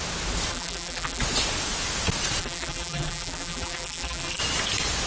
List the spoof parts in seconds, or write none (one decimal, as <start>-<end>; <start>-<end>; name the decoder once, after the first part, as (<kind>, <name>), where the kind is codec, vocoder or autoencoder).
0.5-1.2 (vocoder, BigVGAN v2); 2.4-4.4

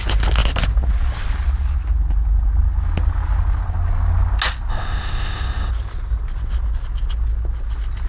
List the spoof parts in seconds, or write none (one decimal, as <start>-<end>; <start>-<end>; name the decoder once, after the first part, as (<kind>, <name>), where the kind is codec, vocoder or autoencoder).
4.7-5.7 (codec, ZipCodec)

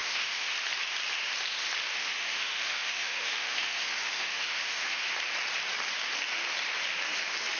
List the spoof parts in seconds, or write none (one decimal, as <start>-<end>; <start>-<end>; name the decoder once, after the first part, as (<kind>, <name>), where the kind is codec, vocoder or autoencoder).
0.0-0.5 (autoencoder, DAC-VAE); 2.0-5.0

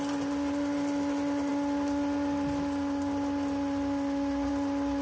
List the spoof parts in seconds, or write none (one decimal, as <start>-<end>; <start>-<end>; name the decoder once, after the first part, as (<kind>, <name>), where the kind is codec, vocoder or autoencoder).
none